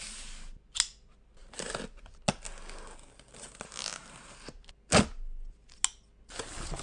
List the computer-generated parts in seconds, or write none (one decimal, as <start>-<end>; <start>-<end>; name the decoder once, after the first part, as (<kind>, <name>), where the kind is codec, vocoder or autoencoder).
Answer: none